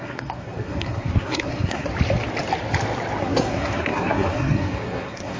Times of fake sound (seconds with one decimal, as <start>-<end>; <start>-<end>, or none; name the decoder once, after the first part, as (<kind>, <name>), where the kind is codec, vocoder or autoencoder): 0.0-1.9 (codec, SNAC); 3.2-5.4